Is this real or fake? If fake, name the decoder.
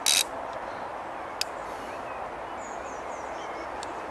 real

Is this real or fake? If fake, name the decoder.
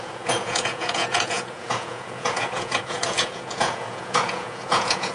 fake, vocoder, Vocos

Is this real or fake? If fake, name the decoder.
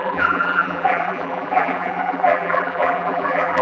fake, vocoder, BigVGAN v2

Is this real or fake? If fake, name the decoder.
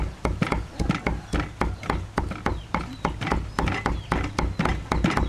real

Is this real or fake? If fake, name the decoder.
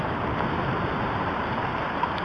fake, vocoder, BigVGAN v2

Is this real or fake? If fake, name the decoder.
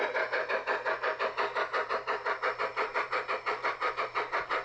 fake, vocoder, BigVGAN v2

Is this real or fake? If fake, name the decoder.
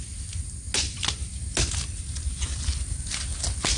real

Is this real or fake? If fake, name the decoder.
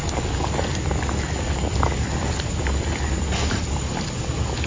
real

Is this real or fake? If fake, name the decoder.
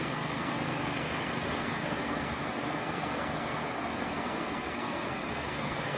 fake, codec, SNAC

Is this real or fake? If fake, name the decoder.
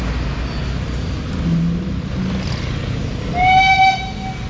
real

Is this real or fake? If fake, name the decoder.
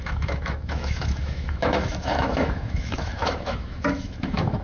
fake, autoencoder, DAC-VAE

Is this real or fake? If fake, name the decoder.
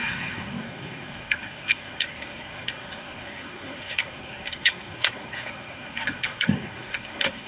fake, codec, SNAC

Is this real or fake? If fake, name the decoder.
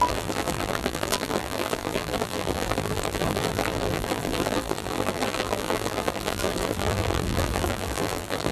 fake, vocoder, BigVGAN v2